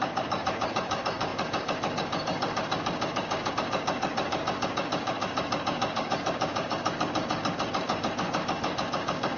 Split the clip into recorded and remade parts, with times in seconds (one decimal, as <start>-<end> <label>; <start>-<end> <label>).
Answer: 0.0-9.4 remade